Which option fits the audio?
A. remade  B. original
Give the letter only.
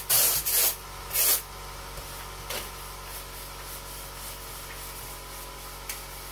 B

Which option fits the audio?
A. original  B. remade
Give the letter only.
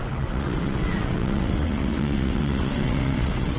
B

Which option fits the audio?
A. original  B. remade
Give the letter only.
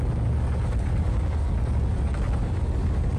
B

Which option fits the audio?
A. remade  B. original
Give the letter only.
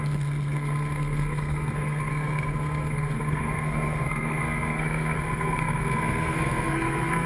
A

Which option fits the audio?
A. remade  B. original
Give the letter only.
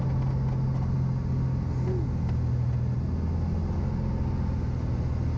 B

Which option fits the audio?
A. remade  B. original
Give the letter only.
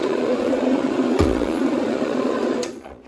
A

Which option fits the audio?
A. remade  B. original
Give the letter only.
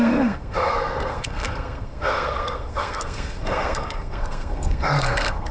A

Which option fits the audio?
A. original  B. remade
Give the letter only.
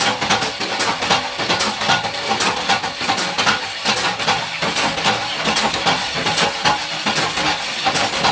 A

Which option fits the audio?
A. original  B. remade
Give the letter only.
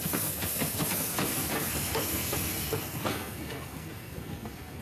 B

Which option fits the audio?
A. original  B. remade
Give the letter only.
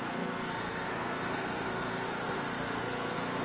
B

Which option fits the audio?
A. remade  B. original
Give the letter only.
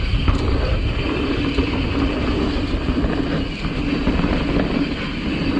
B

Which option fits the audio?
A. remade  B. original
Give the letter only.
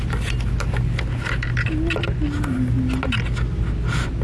B